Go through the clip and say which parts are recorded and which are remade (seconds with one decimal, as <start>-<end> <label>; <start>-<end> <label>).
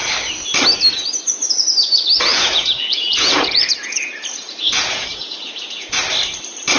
0.0-2.3 recorded; 2.3-6.0 remade; 6.0-6.8 recorded